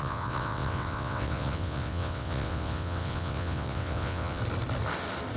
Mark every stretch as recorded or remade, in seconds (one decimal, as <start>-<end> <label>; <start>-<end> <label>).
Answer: 0.0-4.4 remade; 4.4-5.4 recorded